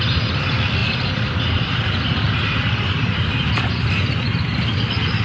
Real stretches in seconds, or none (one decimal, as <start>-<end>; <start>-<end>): 0.0-0.8; 3.9-5.2